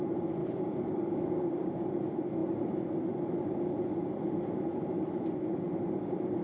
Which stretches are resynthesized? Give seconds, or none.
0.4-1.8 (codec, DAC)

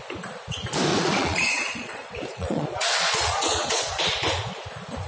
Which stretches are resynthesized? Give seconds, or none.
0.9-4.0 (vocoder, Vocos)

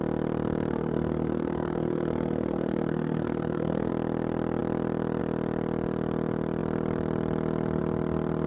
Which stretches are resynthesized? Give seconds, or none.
0.7-3.9 (codec, SNAC)

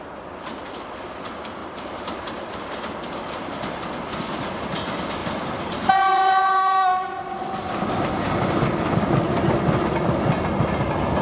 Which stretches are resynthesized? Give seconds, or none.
1.6-2.4 (vocoder, BigVGAN v2); 5.2-6.9

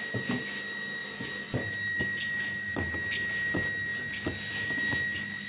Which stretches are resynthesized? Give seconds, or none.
none

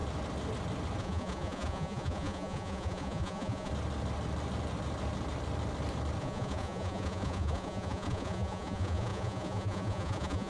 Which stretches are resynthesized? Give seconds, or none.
1.0-3.7 (vocoder, Vocos); 6.2-10.5

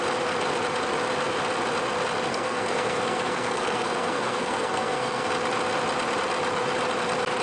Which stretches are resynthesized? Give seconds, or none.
2.3-5.3 (codec, SNAC)

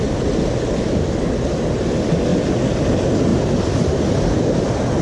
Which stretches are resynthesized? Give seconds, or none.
3.3-3.9 (vocoder, BigVGAN v2)